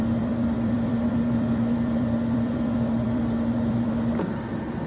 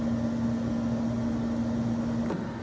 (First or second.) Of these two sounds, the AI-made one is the first